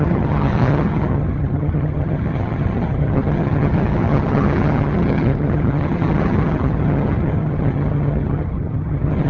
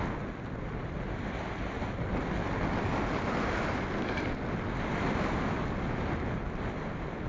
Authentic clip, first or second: second